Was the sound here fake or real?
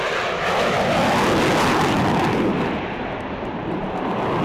real